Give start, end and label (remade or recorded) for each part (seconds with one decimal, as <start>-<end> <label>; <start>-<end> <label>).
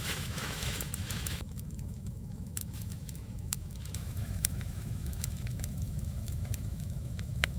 0.0-7.6 remade